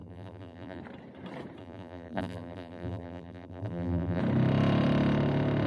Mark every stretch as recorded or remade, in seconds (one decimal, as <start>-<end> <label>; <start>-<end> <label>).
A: 0.0-0.8 remade; 0.8-1.6 recorded; 1.6-4.2 remade; 4.2-5.7 recorded